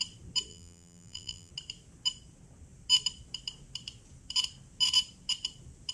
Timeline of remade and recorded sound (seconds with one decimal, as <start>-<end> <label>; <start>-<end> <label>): 0.0-0.5 recorded; 0.5-1.5 remade; 1.5-5.9 recorded